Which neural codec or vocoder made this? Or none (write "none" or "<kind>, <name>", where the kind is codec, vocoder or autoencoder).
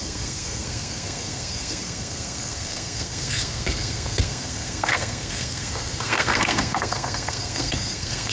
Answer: codec, SNAC